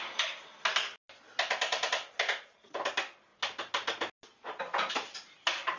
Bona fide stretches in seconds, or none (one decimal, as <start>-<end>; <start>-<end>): 0.0-5.8